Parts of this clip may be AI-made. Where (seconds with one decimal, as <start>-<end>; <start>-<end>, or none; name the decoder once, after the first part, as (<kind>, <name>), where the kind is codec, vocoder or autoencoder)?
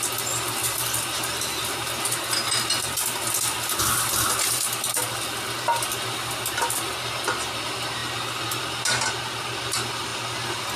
none